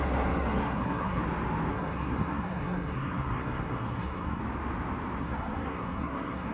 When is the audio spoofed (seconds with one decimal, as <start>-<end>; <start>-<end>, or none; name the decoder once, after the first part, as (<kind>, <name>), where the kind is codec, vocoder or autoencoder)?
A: 0.0-1.2 (codec, SNAC); 1.7-4.4; 5.2-6.5

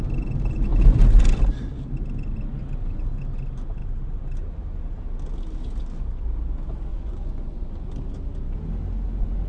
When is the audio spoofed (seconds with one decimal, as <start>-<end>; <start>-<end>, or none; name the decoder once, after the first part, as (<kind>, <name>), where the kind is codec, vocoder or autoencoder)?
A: 6.9-7.7 (vocoder, Vocos)

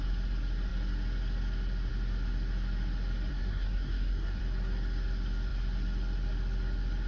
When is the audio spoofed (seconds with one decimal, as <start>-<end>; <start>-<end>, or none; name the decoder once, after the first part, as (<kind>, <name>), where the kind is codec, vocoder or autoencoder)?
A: 3.3-4.4 (codec, SNAC)

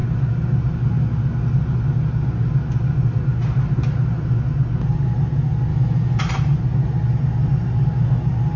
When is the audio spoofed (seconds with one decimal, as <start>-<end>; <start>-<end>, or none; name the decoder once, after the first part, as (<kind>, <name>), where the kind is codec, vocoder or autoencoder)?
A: 5.7-6.2 (autoencoder, DAC-VAE)

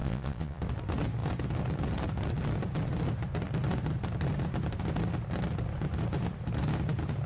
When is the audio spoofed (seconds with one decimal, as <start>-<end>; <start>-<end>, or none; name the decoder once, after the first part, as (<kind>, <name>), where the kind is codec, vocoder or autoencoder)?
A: 0.0-0.6 (vocoder, Vocos)

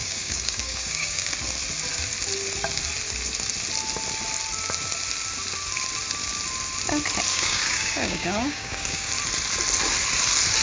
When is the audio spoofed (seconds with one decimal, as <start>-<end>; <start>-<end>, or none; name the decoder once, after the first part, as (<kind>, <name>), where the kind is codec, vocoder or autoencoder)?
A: 0.0-1.3 (codec, DAC); 7.3-9.1